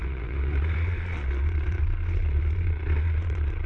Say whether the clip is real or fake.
fake